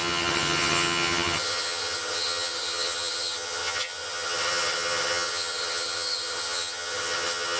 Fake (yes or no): yes